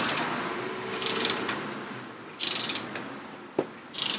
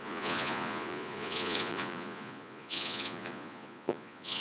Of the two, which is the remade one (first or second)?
second